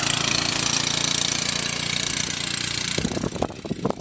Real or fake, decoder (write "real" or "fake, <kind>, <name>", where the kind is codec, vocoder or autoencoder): real